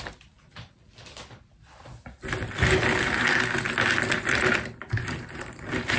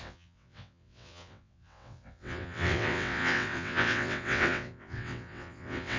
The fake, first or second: second